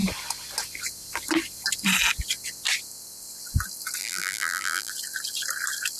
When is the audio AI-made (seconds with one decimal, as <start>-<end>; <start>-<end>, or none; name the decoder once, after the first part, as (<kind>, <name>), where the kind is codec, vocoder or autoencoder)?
4.0-4.9 (vocoder, BigVGAN v2)